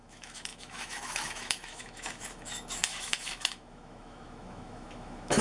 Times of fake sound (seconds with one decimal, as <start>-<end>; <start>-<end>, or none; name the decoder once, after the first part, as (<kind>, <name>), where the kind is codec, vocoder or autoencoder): 0.0-5.4 (autoencoder, DAC-VAE)